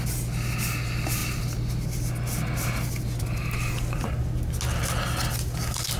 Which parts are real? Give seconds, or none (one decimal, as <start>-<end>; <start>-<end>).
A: 0.0-6.0